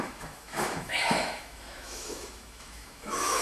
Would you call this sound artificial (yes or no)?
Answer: yes